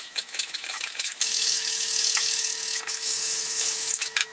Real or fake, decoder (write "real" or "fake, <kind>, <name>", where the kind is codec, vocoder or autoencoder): fake, autoencoder, DAC-VAE